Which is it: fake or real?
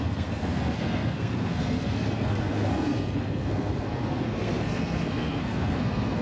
fake